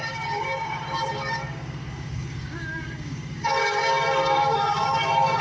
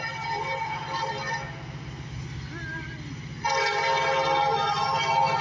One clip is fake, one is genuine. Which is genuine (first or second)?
second